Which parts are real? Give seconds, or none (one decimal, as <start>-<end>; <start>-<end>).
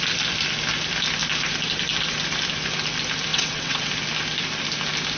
0.0-3.3; 3.9-5.2